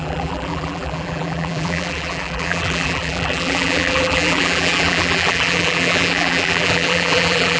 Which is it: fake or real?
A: fake